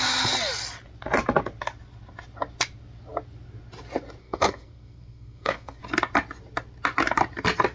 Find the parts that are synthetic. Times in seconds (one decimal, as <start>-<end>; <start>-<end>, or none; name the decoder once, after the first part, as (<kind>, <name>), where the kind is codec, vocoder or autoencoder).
4.2-5.8 (codec, SNAC)